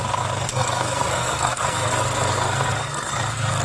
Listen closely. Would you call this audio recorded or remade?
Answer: remade